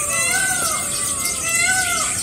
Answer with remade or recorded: remade